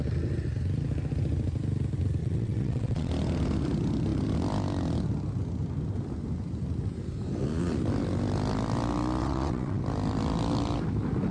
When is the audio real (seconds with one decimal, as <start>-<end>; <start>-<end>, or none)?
0.0-2.2; 3.1-9.2; 9.8-11.3